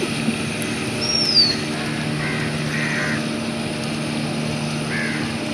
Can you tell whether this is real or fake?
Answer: real